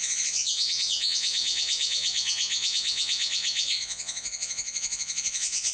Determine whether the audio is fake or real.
fake